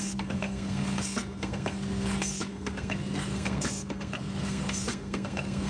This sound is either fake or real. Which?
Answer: fake